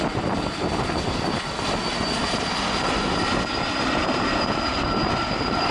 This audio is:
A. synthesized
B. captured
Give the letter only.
A